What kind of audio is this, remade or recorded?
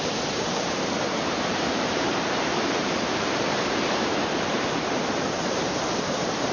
remade